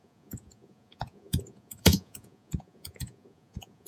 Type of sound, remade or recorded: remade